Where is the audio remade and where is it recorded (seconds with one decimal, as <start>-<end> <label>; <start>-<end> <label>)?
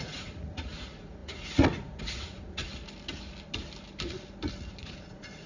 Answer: 0.0-2.6 remade; 2.6-4.7 recorded; 4.7-5.5 remade